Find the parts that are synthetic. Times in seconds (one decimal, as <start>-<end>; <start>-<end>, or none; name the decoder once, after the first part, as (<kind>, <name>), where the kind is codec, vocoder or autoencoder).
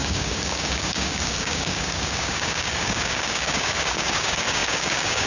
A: 0.0-5.3 (codec, DAC)